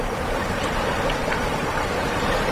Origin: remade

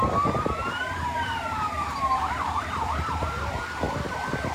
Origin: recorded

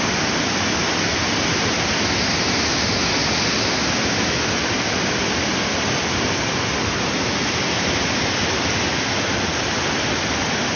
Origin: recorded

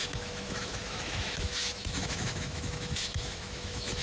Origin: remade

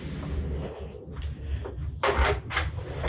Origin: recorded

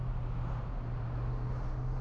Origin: recorded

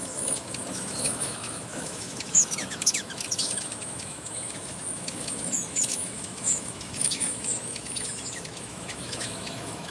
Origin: remade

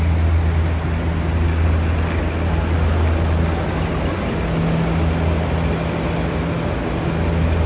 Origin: recorded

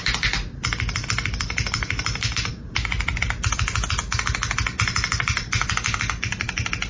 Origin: recorded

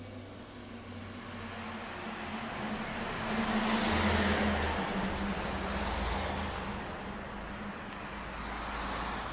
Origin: recorded